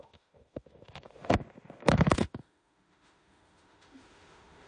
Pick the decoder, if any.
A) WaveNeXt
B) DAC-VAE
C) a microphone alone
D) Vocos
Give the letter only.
B